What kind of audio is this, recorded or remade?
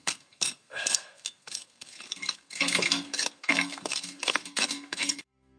remade